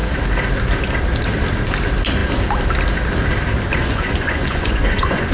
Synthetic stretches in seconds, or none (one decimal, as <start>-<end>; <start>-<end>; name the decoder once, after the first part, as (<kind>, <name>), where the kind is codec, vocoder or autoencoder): 3.8-5.3 (vocoder, Vocos)